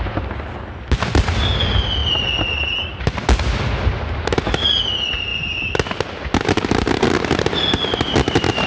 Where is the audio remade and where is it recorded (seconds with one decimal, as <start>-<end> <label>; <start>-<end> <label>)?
0.0-8.7 recorded